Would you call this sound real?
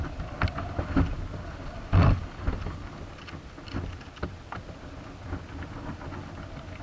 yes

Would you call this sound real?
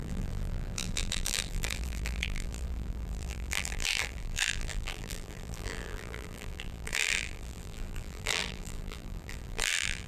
no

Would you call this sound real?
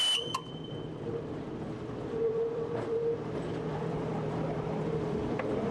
no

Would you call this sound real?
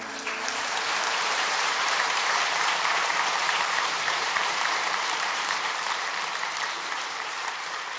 no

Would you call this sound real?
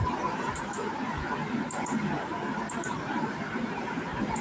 no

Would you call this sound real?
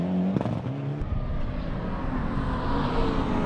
yes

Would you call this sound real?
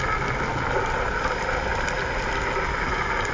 yes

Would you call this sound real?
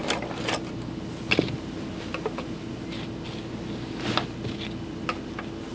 yes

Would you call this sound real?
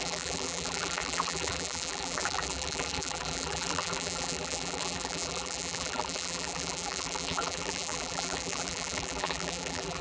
no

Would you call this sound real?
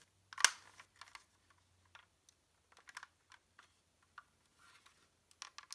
yes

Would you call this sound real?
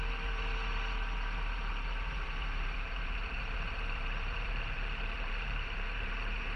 no